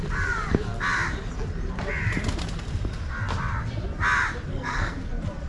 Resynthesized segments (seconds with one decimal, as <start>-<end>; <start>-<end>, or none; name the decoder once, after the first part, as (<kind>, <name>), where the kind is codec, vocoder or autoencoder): 4.5-5.1 (codec, SNAC)

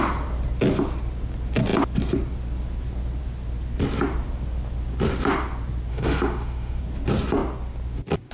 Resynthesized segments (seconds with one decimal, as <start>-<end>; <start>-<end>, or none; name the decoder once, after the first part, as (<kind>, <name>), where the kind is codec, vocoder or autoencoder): 5.9-6.8 (autoencoder, DAC-VAE)

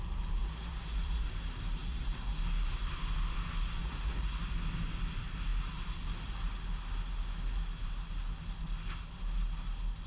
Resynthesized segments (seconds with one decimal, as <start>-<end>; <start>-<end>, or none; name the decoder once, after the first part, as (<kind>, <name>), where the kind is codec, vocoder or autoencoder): 0.4-1.3 (vocoder, Vocos); 1.8-2.4; 3.8-4.4

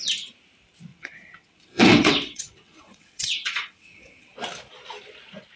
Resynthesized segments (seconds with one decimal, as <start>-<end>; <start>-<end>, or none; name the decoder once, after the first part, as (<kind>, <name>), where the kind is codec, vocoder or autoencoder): 0.9-4.3 (vocoder, WaveNeXt)